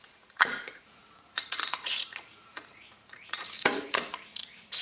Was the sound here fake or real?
fake